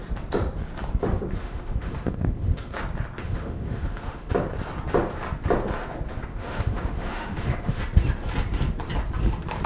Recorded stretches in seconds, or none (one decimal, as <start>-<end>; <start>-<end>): 0.0-1.4; 2.8-3.2; 4.3-6.3; 7.8-9.7

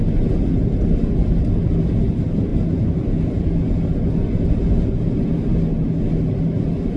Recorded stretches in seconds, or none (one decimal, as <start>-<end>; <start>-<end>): 0.0-7.0